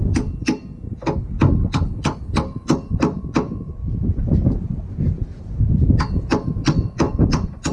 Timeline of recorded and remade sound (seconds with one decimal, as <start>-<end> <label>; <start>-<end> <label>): 0.0-2.3 recorded; 2.3-2.9 remade; 2.9-7.7 recorded